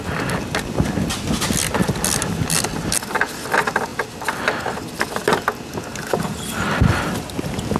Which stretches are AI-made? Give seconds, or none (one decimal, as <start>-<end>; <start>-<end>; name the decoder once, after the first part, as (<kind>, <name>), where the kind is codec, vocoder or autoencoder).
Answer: 3.9-4.9 (vocoder, BigVGAN v2)